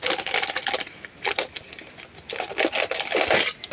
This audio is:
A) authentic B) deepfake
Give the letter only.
A